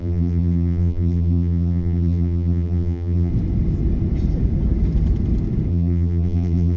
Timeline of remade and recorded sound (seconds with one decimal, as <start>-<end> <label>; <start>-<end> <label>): 0.0-3.3 remade; 3.3-5.7 recorded; 5.7-6.8 remade